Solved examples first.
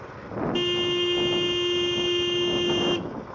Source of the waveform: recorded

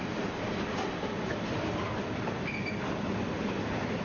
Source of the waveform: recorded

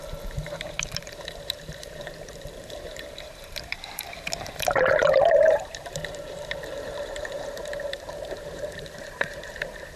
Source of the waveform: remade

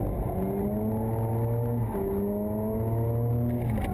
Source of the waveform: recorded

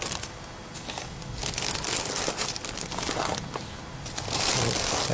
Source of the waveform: recorded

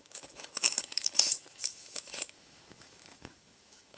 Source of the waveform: remade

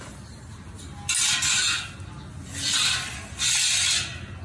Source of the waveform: recorded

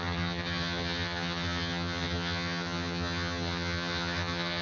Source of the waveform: remade